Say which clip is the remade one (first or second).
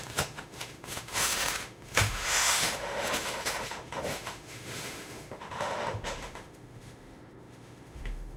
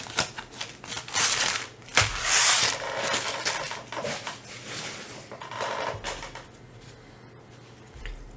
first